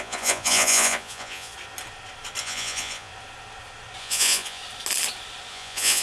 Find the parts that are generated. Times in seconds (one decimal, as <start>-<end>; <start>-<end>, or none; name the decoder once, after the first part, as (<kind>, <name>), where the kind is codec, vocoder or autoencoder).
0.0-1.5 (vocoder, Vocos); 2.4-3.1; 4.0-4.6; 5.5-6.0